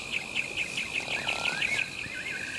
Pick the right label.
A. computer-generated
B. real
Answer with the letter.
B